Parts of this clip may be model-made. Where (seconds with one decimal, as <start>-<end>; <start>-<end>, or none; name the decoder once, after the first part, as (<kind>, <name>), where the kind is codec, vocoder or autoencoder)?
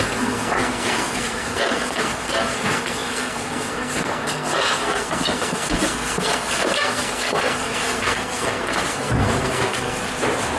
0.0-10.0 (codec, SNAC)